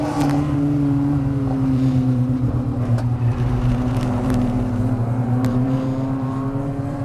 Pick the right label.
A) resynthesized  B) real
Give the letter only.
A